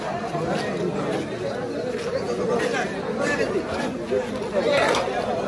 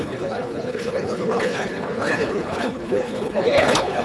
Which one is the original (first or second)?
first